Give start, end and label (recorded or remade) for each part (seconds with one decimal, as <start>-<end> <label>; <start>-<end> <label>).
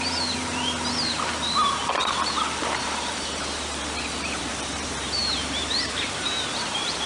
0.0-2.6 recorded; 2.6-7.1 remade